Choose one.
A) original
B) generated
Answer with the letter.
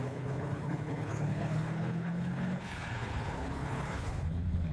B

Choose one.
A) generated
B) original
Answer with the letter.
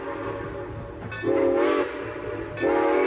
B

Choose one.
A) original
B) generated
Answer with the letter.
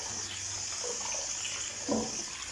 A